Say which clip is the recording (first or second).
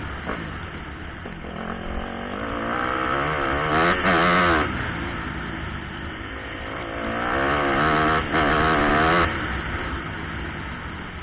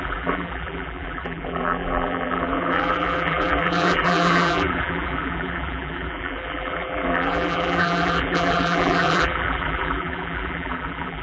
first